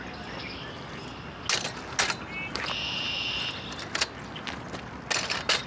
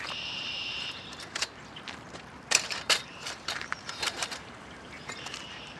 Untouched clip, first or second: first